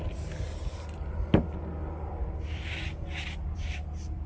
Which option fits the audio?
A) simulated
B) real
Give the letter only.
B